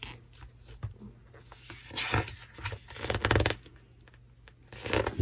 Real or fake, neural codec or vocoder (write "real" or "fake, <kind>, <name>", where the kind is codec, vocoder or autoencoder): real